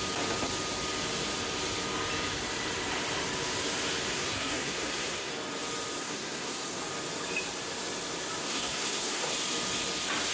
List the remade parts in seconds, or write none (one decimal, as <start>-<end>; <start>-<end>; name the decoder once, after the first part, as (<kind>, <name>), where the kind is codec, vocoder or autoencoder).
4.1-5.3 (codec, SNAC); 6.0-6.8; 8.4-9.3